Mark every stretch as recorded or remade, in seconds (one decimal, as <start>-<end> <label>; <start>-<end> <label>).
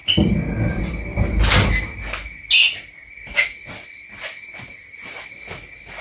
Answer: 0.0-6.0 recorded